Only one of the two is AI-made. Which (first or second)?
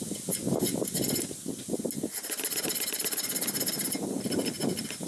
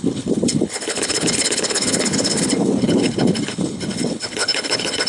second